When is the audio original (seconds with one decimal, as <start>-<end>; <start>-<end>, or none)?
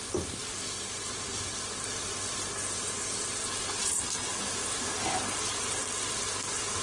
0.0-6.8